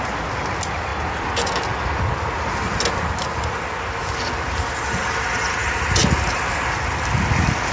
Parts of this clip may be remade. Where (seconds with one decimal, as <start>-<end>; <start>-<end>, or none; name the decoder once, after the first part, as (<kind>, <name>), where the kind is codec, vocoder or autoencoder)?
none